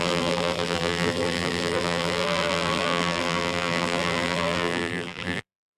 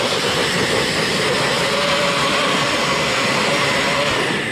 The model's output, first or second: first